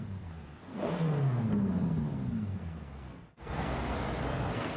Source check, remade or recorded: remade